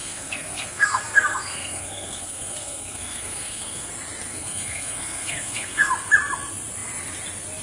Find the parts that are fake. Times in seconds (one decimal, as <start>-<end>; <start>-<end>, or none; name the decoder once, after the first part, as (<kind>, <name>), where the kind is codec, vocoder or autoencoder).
0.0-3.9 (codec, SNAC); 4.3-5.9